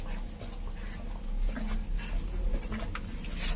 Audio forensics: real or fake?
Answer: real